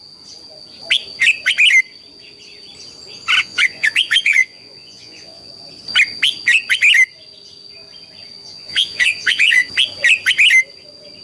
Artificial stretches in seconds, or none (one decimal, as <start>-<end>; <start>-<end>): 3.4-5.5; 8.4-9.7

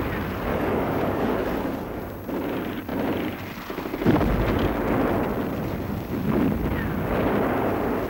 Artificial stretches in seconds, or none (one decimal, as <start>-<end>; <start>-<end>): 0.5-2.0

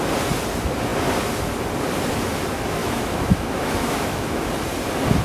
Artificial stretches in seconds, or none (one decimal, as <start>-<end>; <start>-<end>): 2.8-4.5

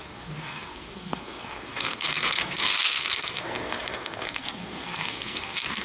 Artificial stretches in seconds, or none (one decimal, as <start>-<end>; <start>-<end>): 0.0-5.8

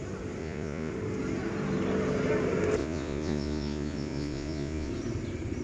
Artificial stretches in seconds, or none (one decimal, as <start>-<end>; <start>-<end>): 0.4-0.9; 2.8-4.9

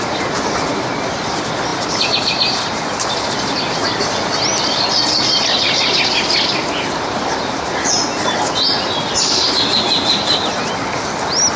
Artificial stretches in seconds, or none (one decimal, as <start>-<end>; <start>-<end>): none